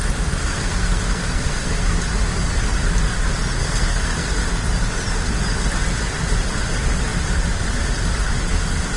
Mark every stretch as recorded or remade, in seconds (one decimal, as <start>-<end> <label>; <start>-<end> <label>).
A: 0.0-0.4 recorded; 0.4-2.0 remade; 2.0-3.6 recorded; 3.6-4.3 remade; 4.3-9.0 recorded